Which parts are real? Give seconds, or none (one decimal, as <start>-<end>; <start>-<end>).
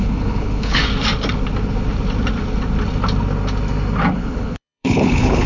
0.8-4.1